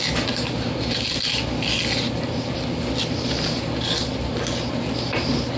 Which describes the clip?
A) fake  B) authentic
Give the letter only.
B